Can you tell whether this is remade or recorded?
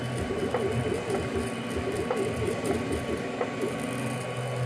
recorded